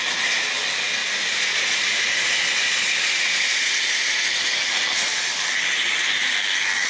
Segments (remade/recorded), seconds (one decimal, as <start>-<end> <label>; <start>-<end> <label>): 0.0-1.0 recorded; 1.0-4.5 remade; 4.5-6.9 recorded